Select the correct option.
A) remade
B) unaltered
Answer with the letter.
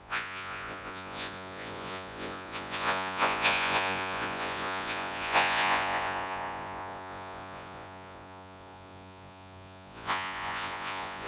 A